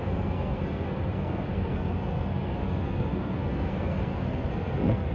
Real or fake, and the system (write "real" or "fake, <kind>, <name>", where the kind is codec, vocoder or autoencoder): fake, codec, SNAC